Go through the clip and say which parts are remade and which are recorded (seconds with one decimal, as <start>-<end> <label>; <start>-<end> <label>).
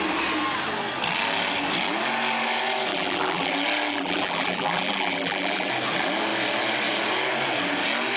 0.0-2.9 recorded; 2.9-3.5 remade; 3.5-3.9 recorded; 3.9-5.7 remade; 5.7-8.2 recorded